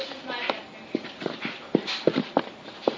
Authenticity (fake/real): real